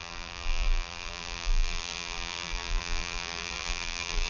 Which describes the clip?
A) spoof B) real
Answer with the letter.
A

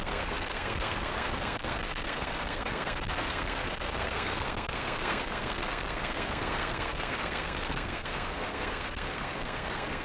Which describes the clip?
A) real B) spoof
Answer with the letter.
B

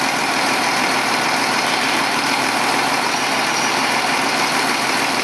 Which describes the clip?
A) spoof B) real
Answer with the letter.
A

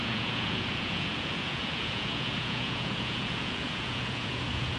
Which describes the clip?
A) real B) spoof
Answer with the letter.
B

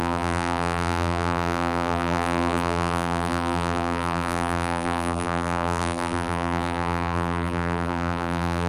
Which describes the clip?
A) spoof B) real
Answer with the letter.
A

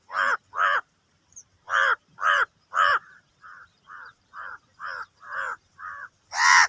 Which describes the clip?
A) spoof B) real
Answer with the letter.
A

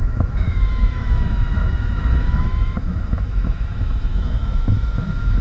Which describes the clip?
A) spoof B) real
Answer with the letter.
A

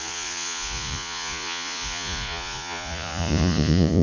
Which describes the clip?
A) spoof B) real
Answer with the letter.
A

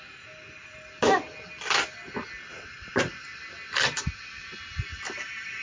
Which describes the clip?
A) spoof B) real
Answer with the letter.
B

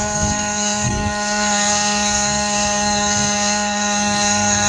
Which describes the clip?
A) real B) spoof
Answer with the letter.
B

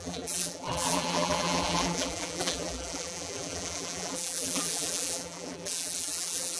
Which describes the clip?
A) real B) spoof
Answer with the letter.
B